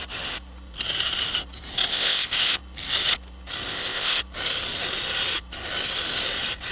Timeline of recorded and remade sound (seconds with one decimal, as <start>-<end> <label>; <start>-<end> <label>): 0.0-1.9 recorded; 1.9-2.6 remade; 2.6-3.7 recorded; 3.7-4.2 remade; 4.2-6.7 recorded